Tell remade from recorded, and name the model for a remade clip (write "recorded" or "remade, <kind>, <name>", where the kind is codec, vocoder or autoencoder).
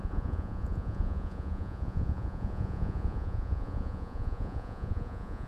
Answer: remade, vocoder, Vocos